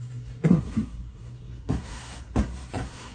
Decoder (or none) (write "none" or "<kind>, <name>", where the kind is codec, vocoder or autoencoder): codec, SNAC